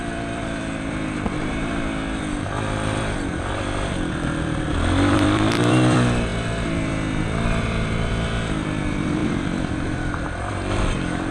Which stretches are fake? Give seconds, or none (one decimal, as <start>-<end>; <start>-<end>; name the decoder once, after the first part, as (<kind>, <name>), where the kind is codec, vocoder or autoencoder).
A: 0.0-11.3 (vocoder, BigVGAN v2)